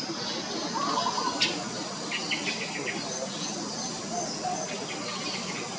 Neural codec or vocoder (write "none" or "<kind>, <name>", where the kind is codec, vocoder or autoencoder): none